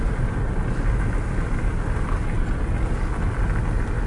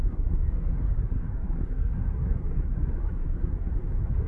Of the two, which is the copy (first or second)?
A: second